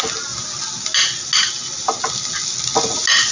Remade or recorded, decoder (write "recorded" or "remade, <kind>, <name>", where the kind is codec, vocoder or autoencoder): recorded